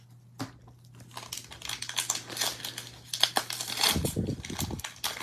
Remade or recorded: recorded